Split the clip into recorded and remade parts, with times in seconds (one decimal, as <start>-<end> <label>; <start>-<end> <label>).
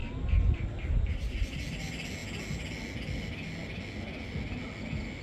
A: 0.0-5.2 recorded